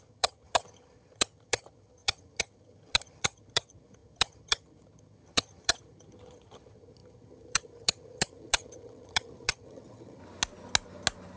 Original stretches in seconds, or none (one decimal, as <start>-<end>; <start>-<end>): 10.2-11.4